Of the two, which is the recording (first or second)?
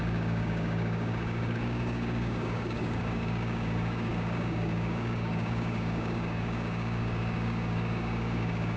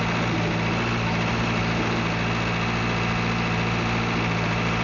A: second